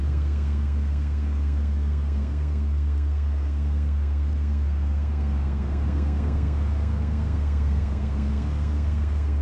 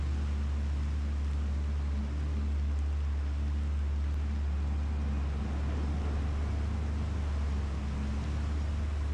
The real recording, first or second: second